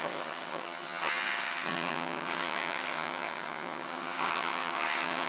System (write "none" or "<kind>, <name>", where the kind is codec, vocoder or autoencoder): vocoder, HiFi-GAN